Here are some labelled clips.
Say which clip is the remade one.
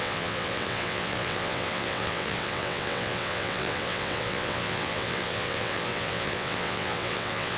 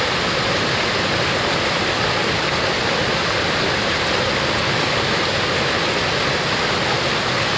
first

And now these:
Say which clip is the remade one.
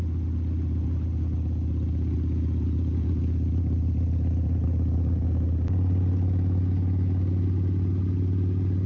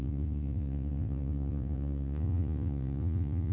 second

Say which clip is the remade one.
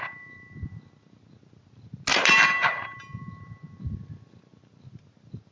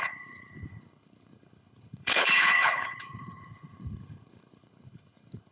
second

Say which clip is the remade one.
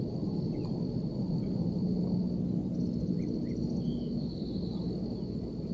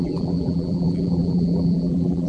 second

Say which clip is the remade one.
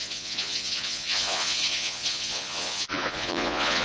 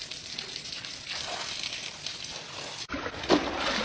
first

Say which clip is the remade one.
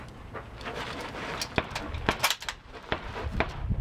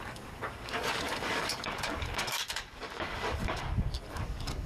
second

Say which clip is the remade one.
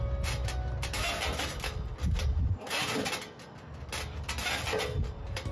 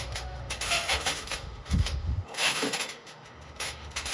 second